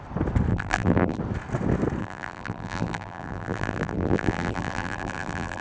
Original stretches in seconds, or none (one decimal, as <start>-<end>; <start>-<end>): 0.0-0.5; 1.2-2.0